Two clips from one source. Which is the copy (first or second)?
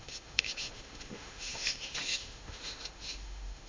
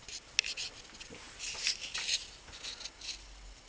first